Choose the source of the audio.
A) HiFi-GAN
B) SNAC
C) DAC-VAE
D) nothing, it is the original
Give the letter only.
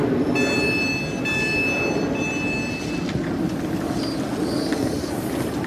D